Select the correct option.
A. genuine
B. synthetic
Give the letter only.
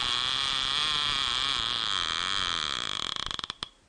A